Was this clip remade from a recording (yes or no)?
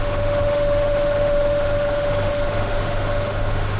yes